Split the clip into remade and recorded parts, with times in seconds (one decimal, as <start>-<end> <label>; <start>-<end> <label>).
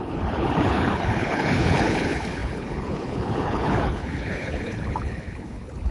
0.0-5.9 remade